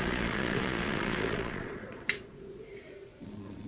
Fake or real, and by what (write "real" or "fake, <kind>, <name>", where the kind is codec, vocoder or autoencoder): fake, vocoder, Vocos